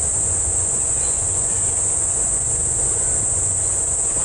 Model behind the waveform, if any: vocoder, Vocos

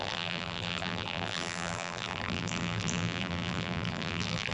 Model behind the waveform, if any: vocoder, BigVGAN v2